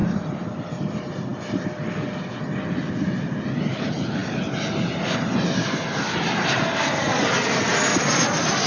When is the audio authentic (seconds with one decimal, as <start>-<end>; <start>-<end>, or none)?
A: 0.0-8.7